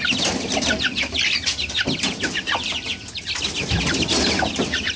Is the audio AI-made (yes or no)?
no